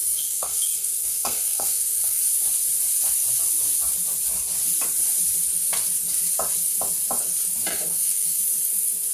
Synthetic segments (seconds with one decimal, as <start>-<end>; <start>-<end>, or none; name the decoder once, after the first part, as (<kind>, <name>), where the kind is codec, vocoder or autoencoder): 0.0-2.2 (codec, SNAC); 7.7-8.4

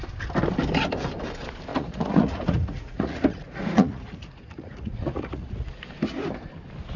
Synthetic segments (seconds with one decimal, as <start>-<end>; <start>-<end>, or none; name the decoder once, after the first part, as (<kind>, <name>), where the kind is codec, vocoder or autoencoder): 1.7-5.9 (vocoder, Vocos)

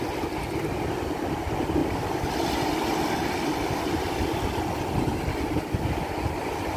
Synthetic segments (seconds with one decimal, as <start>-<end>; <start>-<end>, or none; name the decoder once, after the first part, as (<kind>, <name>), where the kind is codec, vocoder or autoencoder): none

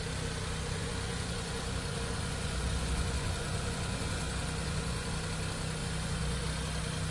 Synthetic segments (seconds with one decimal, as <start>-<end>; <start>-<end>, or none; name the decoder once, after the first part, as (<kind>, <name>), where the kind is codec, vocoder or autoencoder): 0.8-5.1 (vocoder, Vocos); 5.8-6.4